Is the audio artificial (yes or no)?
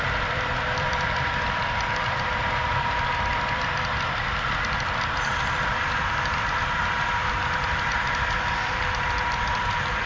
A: yes